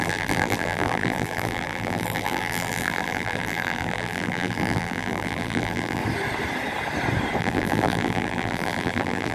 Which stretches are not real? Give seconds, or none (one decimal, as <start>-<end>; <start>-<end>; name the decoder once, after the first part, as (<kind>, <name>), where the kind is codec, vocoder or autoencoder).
0.0-6.0 (vocoder, BigVGAN v2); 7.4-9.3